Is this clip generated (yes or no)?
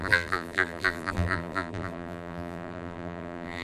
yes